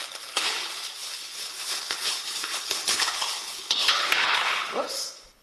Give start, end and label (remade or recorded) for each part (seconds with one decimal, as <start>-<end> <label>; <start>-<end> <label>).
0.0-5.4 remade